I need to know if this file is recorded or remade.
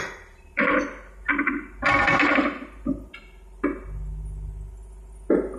recorded